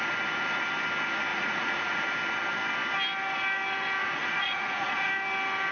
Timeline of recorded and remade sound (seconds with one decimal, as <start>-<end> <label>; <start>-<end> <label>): 0.0-1.3 recorded; 1.3-2.0 remade; 2.0-4.0 recorded; 4.0-5.1 remade; 5.1-5.7 recorded